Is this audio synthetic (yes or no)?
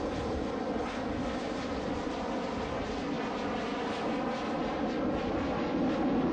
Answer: no